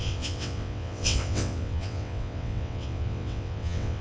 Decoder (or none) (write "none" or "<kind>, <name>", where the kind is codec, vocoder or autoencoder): vocoder, WaveNeXt